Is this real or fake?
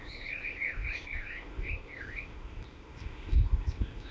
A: fake